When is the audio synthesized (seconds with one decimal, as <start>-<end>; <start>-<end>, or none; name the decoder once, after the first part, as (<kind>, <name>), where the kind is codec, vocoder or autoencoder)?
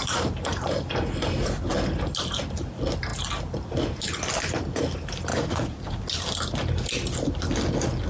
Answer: 5.3-6.0 (vocoder, Vocos)